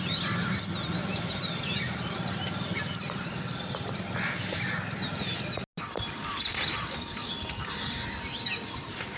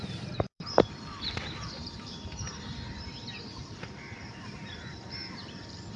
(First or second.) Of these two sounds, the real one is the first